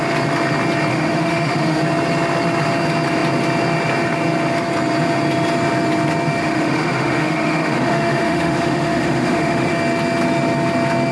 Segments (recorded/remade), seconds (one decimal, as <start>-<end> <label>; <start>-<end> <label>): 0.0-0.9 recorded; 0.9-1.8 remade; 1.8-6.4 recorded; 6.4-9.7 remade; 9.7-11.1 recorded